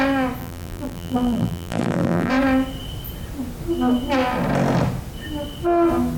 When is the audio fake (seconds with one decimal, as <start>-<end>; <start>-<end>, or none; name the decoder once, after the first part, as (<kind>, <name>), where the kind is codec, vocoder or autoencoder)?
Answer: 0.4-2.3 (vocoder, BigVGAN v2)